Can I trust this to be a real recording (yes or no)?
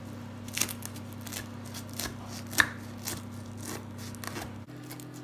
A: yes